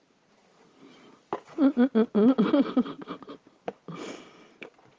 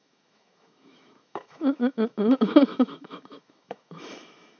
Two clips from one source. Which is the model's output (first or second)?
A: second